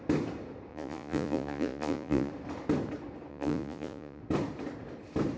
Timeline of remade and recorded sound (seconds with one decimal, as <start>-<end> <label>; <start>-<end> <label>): 0.0-0.7 recorded; 0.7-2.3 remade; 2.3-3.3 recorded; 3.3-4.2 remade; 4.2-5.4 recorded